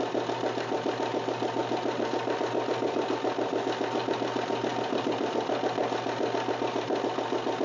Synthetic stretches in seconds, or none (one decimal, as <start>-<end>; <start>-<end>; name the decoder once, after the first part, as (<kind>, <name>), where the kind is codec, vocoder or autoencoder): none